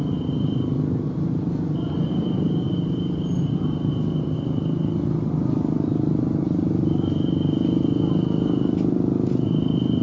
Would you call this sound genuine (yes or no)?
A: yes